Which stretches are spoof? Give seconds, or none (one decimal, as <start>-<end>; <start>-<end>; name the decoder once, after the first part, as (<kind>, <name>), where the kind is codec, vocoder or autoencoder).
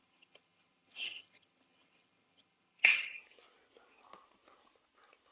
0.0-3.2 (vocoder, HiFi-GAN)